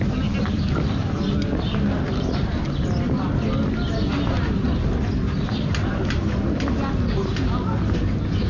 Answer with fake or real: real